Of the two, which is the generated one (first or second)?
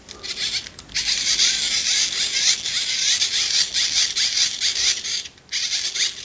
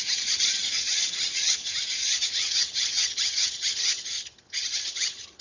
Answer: second